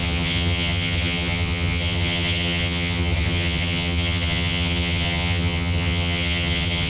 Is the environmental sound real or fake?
fake